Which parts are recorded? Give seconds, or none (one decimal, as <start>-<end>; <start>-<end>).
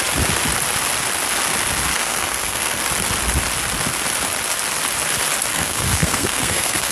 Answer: 0.0-1.9; 2.8-5.5